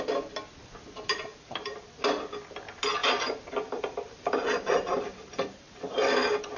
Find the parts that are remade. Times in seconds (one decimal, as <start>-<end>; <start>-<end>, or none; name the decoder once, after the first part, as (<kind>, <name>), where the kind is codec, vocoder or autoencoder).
1.3-1.9 (vocoder, BigVGAN v2); 3.0-6.6